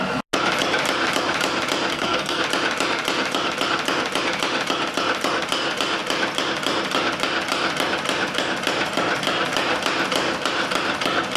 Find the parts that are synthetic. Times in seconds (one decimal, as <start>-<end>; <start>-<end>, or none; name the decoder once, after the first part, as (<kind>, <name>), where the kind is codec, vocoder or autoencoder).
1.9-2.4 (codec, SNAC)